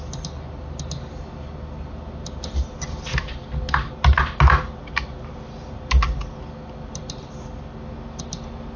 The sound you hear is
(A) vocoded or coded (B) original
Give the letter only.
B